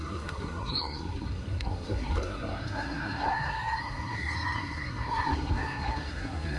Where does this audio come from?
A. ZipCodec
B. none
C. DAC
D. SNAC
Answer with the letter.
D